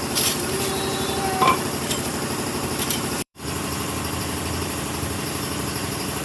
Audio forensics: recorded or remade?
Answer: remade